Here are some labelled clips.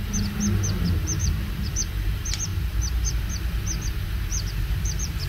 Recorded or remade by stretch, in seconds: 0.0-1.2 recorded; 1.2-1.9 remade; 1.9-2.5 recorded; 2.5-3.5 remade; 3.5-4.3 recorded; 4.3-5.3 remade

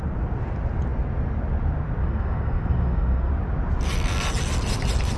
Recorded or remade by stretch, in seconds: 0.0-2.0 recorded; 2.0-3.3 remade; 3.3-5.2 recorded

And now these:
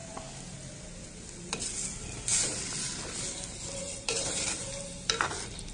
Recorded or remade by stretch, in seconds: 0.0-5.7 recorded

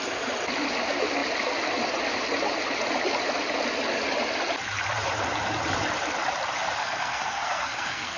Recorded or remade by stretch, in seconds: 0.0-6.8 recorded; 6.8-8.2 remade